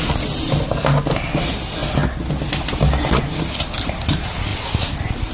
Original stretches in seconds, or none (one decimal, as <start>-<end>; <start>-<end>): 0.0-5.3